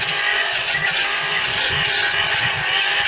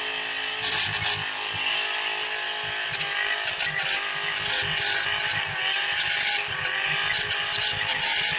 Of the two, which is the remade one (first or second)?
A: first